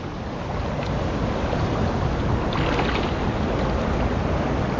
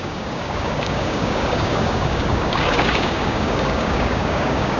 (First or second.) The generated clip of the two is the second